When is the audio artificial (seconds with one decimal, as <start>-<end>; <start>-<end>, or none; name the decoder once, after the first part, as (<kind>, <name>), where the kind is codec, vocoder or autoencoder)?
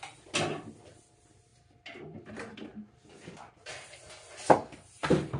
none